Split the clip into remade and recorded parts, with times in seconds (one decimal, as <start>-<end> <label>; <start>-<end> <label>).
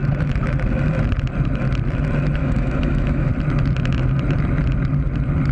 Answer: 0.0-2.4 recorded; 2.4-3.3 remade; 3.3-5.5 recorded